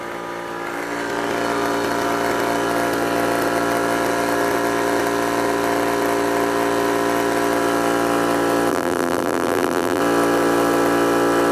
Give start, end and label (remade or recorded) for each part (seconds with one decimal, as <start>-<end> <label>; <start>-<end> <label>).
0.0-8.7 recorded; 8.7-10.0 remade; 10.0-11.5 recorded